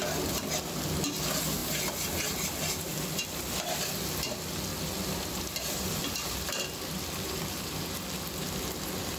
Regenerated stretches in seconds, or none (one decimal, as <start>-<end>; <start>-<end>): 1.6-2.1; 2.9-3.4; 4.7-7.8